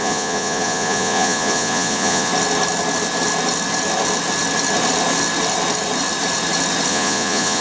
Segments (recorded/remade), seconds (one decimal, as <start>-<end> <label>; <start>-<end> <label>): 0.0-2.3 remade; 2.3-6.9 recorded; 6.9-7.6 remade